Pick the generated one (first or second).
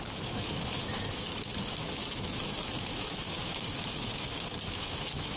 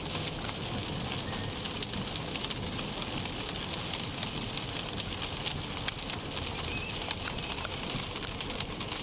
first